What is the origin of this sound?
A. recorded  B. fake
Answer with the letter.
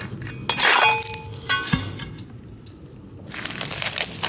A